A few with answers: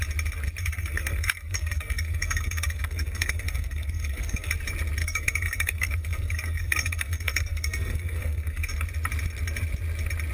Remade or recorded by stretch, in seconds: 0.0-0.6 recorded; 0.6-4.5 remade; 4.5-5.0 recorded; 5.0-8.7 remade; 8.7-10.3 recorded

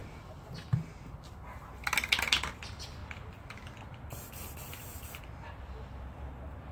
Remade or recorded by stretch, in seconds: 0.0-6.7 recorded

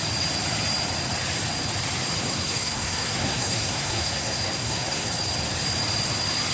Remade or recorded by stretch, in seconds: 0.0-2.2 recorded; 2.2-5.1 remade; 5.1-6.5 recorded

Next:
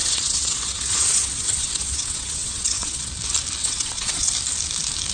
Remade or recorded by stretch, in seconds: 0.0-3.1 remade; 3.1-3.6 recorded; 3.6-4.3 remade; 4.3-5.1 recorded